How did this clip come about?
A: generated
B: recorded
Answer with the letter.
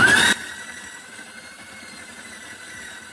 A